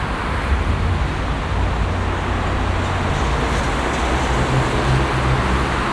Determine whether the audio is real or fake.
real